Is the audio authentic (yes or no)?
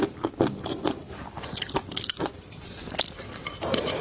no